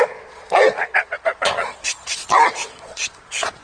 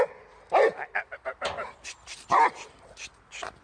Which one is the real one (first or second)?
second